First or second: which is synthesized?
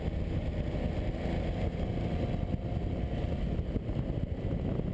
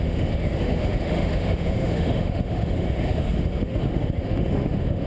second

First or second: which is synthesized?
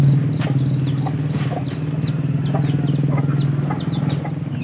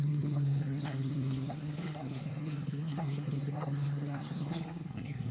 second